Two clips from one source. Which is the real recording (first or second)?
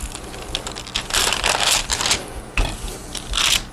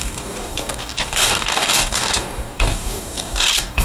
first